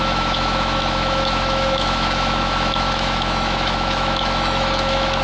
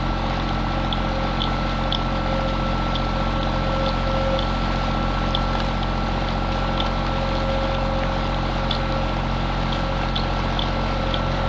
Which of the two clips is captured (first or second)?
second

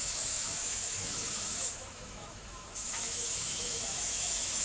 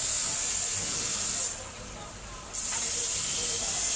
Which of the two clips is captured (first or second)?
second